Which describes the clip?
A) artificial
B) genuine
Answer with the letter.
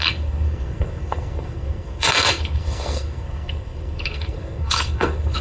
A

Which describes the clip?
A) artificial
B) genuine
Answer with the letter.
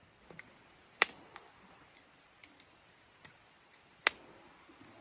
B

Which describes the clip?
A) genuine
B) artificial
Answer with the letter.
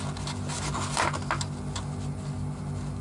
A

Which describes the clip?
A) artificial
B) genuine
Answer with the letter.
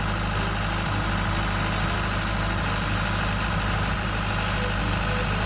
B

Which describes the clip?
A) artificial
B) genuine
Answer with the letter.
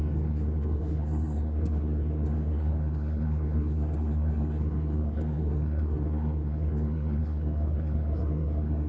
A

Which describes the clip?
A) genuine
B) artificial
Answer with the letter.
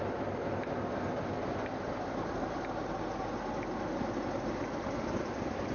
A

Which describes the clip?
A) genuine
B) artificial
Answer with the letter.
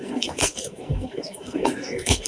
B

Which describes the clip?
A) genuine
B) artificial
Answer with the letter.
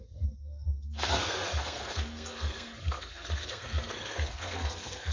B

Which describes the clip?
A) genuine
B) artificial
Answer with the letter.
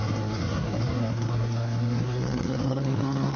B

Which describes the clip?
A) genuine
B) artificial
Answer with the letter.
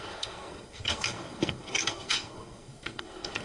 B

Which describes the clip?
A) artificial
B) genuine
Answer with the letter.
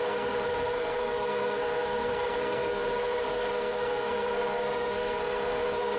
A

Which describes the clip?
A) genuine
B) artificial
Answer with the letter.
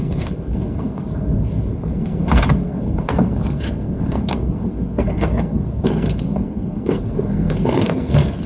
B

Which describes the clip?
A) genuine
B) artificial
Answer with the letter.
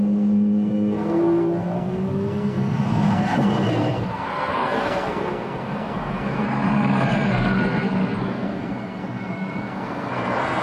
B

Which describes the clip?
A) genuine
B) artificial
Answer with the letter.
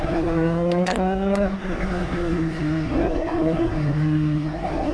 B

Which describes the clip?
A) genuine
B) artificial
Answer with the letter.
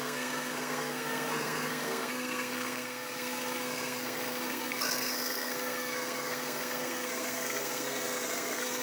B